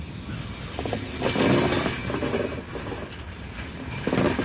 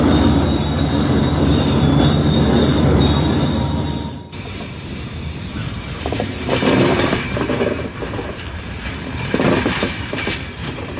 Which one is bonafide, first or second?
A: first